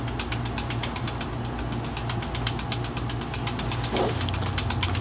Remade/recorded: recorded